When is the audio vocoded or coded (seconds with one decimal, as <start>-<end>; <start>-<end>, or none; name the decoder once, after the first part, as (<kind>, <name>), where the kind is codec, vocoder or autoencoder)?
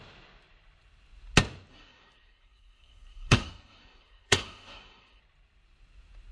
1.7-5.2 (codec, SNAC)